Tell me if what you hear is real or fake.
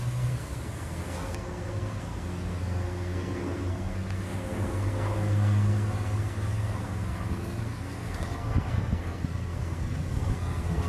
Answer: fake